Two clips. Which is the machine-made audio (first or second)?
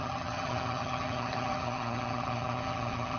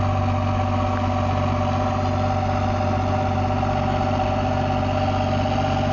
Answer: first